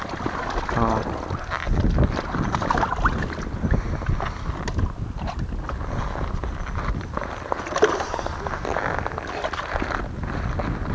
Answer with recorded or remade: recorded